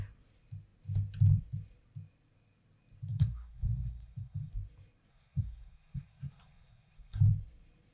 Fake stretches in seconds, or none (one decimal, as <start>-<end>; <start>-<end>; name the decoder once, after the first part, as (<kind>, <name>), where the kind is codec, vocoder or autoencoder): 3.1-4.5 (codec, SNAC); 5.1-7.2